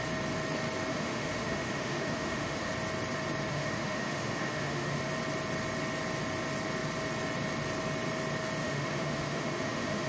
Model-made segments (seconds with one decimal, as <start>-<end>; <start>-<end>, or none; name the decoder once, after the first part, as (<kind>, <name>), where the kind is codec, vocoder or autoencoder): 0.9-2.7 (autoencoder, DAC-VAE); 3.5-5.0; 8.6-10.1